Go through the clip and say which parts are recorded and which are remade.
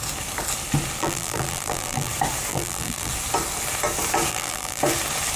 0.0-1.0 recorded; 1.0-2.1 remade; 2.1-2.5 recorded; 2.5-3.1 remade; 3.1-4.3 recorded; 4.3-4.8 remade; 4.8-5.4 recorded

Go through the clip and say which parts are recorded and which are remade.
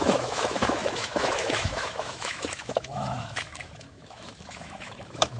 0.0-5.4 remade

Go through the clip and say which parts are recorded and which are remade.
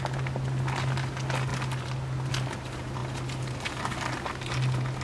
0.0-5.0 recorded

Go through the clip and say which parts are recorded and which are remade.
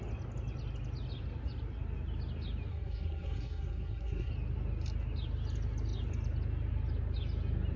0.0-2.7 recorded; 2.7-4.3 remade; 4.3-7.8 recorded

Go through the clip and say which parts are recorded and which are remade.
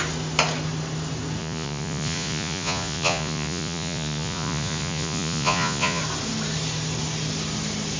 0.0-1.4 recorded; 1.4-6.0 remade; 6.0-8.0 recorded